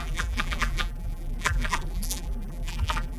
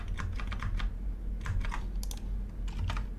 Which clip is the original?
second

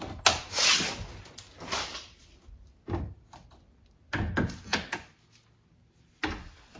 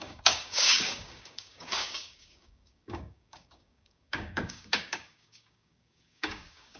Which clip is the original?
first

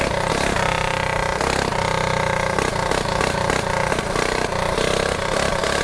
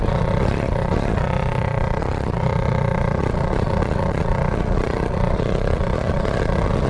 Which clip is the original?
first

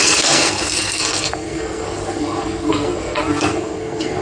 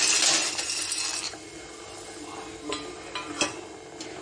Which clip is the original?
second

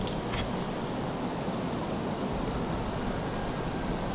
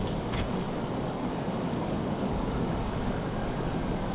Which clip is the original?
first